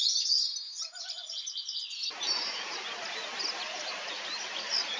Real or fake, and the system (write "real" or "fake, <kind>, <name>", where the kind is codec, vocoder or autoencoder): real